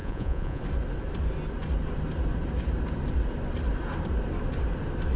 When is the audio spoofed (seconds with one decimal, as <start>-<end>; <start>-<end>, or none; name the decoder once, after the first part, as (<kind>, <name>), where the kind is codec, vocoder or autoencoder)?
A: 0.0-0.6 (vocoder, Vocos)